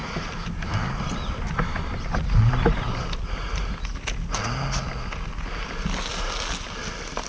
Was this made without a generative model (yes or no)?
yes